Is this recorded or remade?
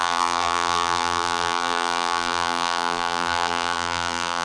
remade